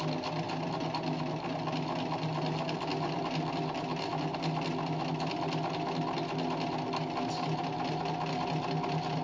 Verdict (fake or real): real